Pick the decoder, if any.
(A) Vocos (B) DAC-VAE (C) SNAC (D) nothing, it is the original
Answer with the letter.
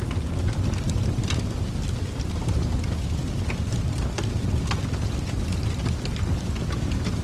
D